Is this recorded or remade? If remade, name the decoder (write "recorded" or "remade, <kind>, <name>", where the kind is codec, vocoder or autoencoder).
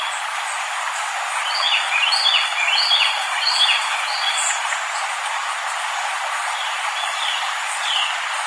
recorded